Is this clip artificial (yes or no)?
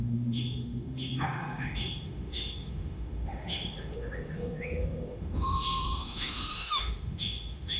yes